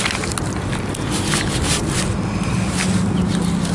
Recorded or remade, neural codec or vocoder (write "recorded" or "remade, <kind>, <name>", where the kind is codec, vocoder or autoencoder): recorded